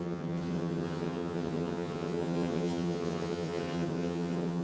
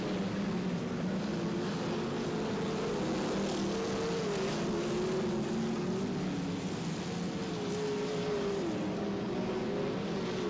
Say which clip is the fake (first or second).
first